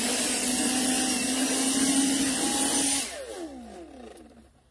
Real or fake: real